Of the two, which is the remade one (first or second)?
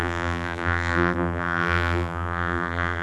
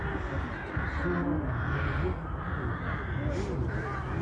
first